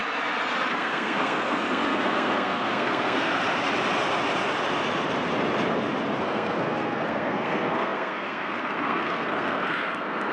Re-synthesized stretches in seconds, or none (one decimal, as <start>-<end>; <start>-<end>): 0.7-3.3; 6.2-10.3